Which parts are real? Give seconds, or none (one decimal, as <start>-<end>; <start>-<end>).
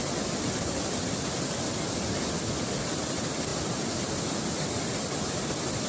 0.0-5.9